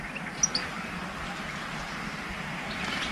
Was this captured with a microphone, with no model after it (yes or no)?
yes